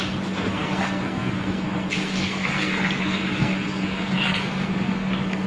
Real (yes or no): no